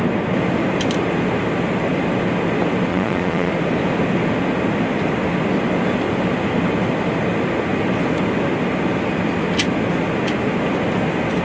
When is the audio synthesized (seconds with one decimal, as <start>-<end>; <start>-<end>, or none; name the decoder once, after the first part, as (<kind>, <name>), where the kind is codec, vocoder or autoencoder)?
2.9-3.5 (vocoder, Vocos)

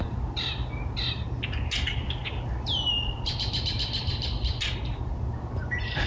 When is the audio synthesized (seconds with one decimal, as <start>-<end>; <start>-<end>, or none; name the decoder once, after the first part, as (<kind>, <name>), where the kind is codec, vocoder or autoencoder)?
none